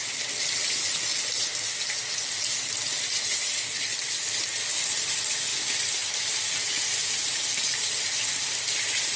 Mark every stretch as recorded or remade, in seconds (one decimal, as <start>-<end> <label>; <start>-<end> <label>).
0.0-7.0 recorded; 7.0-8.2 remade; 8.2-9.2 recorded